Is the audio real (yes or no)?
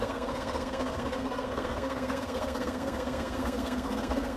no